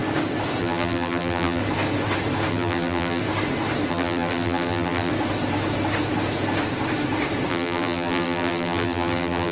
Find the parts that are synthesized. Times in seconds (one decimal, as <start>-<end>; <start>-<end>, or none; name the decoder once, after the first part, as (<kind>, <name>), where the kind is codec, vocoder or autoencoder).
0.6-1.6 (vocoder, BigVGAN v2); 2.5-3.2; 3.9-5.1; 7.5-9.5